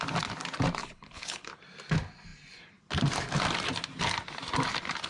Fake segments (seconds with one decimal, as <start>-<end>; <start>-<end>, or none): 0.8-1.6